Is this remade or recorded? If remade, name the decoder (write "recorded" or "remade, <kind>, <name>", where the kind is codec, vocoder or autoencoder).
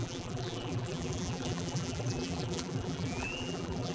remade, vocoder, BigVGAN v2